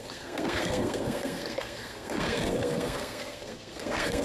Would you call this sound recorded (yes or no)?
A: no